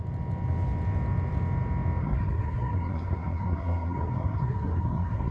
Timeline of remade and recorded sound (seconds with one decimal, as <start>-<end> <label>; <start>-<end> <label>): 0.0-2.0 recorded; 2.0-5.3 remade